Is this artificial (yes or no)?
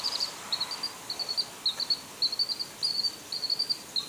no